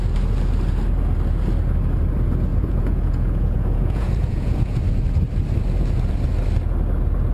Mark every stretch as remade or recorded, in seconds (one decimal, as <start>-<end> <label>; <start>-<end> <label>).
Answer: 0.0-2.5 recorded; 2.5-4.8 remade; 4.8-7.3 recorded